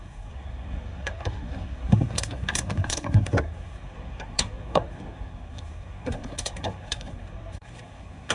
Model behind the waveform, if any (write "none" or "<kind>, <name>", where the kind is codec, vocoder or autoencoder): codec, SNAC